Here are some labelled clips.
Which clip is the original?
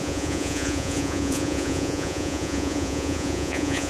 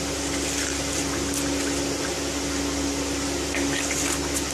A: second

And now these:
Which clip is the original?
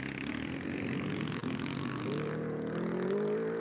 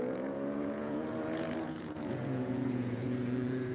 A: first